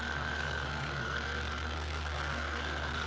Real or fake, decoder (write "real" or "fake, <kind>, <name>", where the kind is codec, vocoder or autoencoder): fake, codec, SNAC